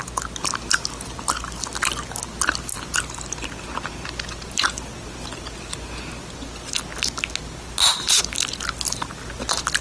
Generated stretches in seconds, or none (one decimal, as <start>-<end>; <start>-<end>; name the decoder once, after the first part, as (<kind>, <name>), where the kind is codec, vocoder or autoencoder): none